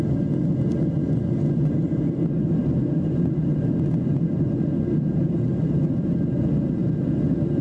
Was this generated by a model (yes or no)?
no